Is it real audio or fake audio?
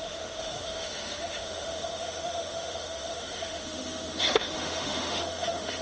fake